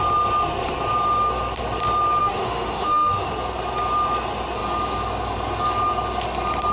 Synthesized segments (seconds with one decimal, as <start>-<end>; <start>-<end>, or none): 2.2-3.3